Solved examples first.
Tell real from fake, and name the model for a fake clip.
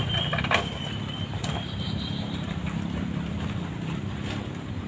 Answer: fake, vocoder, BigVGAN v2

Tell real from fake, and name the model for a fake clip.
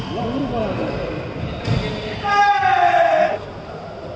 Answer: real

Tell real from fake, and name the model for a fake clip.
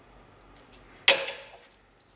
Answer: real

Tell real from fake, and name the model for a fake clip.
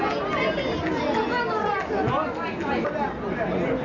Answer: real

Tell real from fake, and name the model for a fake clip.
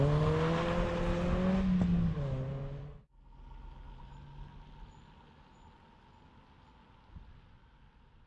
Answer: real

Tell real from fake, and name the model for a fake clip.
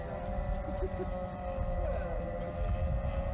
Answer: real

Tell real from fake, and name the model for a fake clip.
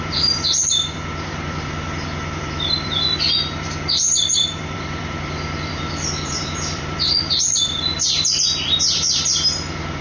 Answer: fake, vocoder, BigVGAN v2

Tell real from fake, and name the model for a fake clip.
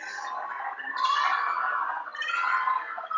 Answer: real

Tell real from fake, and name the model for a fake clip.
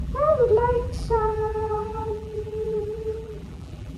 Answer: fake, vocoder, BigVGAN v2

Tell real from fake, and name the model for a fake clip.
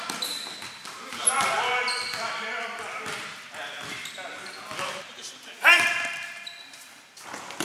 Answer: real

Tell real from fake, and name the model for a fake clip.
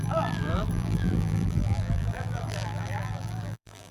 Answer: fake, vocoder, BigVGAN v2